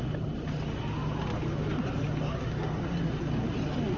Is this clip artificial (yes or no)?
no